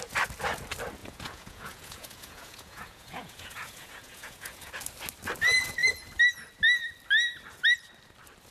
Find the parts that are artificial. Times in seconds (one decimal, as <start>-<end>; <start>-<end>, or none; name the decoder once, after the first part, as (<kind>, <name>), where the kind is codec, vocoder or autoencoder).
1.0-4.7 (vocoder, Vocos)

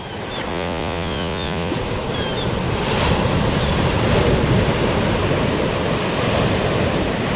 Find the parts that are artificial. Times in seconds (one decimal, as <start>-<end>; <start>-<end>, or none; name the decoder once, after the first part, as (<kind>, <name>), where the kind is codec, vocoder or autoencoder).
0.5-1.7 (vocoder, Vocos)